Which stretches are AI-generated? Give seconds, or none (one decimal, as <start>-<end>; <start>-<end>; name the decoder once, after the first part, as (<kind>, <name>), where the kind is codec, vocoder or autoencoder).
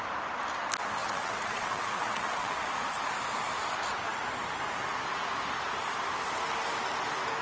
1.0-2.7 (vocoder, WaveNeXt)